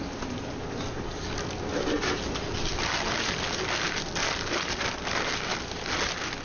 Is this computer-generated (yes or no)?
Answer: no